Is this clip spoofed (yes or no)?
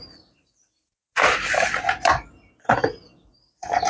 no